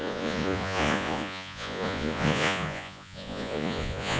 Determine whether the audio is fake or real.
fake